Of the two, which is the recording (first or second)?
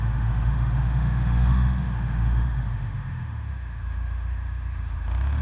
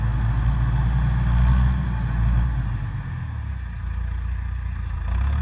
second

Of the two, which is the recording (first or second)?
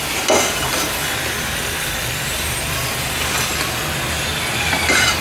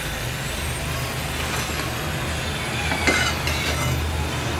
second